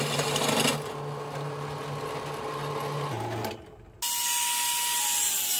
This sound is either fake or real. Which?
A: real